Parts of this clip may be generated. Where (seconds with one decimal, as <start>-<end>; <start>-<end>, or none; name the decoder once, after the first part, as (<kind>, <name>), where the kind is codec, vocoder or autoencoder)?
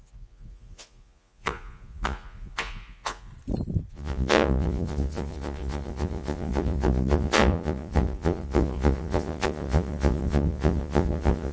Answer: 0.0-3.3 (vocoder, Vocos); 3.9-11.5